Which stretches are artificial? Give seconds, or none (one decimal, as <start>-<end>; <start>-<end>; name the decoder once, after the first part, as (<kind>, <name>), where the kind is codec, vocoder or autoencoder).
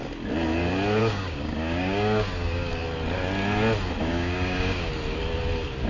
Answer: 1.0-2.7 (codec, DAC); 4.0-4.9